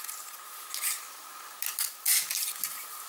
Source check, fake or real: real